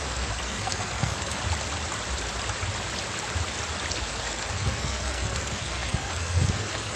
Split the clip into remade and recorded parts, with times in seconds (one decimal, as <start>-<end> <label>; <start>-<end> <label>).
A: 0.0-1.4 remade; 1.4-3.9 recorded; 3.9-7.0 remade